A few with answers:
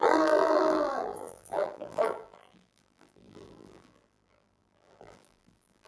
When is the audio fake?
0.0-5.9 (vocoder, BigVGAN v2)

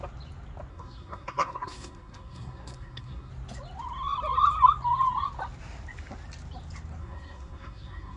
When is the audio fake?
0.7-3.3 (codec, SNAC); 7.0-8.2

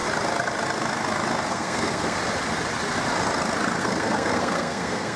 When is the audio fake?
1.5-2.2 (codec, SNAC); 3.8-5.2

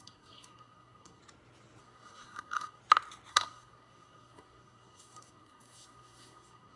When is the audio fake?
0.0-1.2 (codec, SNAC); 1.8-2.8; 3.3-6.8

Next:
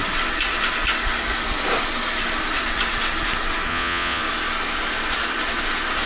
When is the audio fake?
3.7-4.2 (vocoder, Vocos)

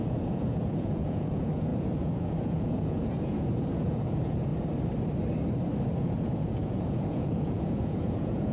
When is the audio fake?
0.0-4.5 (vocoder, Vocos); 6.0-8.5

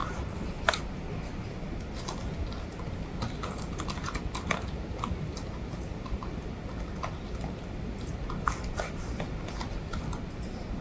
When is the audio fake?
none

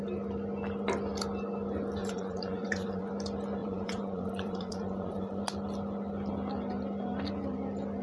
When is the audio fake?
2.0-3.1 (vocoder, Vocos); 3.6-5.4